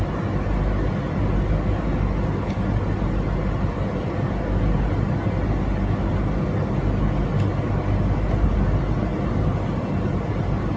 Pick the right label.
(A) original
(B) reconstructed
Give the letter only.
A